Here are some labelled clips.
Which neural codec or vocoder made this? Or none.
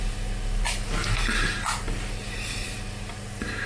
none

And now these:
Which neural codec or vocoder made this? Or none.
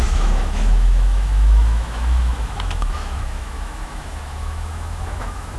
autoencoder, DAC-VAE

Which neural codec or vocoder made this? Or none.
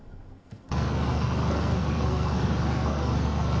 codec, SNAC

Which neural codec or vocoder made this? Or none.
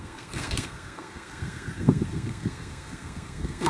codec, SNAC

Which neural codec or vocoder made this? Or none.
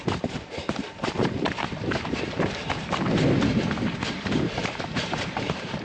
vocoder, BigVGAN v2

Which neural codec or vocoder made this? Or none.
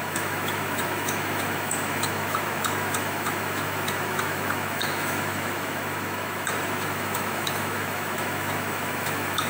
autoencoder, DAC-VAE